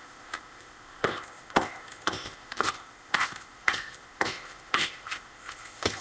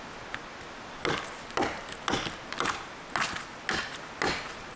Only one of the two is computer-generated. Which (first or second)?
first